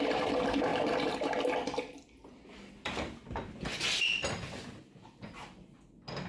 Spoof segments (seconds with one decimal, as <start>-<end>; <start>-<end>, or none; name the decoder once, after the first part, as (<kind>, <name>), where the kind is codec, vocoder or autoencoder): none